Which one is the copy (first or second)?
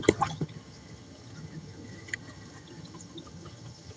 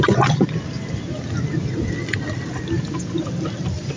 first